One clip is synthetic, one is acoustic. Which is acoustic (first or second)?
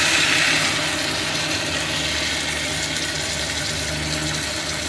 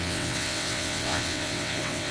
first